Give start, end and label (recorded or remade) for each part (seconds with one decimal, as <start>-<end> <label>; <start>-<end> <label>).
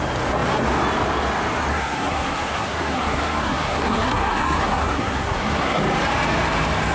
0.0-1.7 recorded; 1.7-5.8 remade; 5.8-6.9 recorded